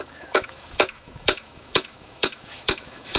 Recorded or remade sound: remade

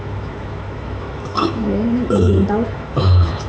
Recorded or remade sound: remade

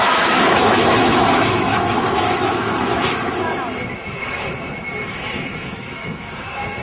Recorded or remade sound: remade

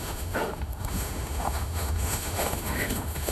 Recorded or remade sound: remade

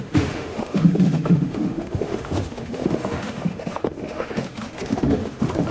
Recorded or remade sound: remade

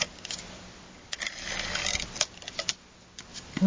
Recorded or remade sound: recorded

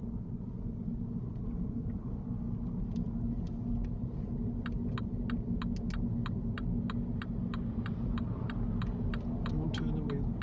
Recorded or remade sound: recorded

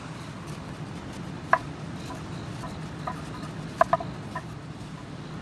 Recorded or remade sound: recorded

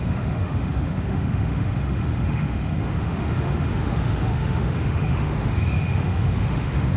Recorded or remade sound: remade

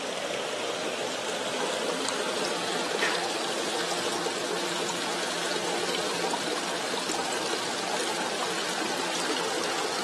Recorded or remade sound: recorded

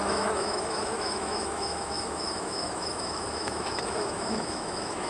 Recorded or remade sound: remade